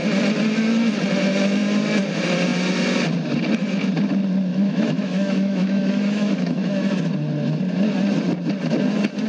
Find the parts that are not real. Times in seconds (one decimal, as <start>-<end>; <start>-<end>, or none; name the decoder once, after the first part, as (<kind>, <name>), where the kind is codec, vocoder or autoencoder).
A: 4.5-6.9 (autoencoder, DAC-VAE)